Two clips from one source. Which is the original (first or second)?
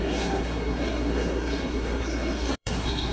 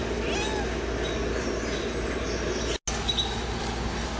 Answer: second